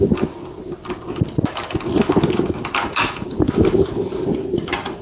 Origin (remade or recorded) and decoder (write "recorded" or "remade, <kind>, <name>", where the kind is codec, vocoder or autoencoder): recorded